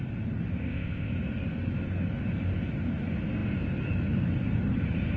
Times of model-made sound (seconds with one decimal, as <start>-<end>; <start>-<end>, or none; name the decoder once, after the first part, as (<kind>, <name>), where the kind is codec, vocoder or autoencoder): 0.6-1.1 (codec, ZipCodec)